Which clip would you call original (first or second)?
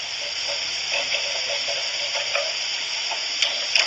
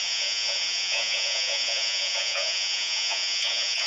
first